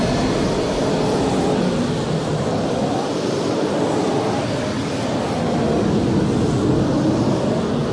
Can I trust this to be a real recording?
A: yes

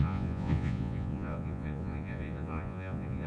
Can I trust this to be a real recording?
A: no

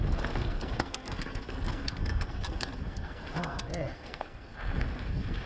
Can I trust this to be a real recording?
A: no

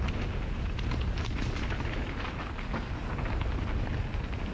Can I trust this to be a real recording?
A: yes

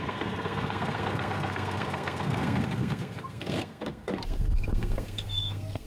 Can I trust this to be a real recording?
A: no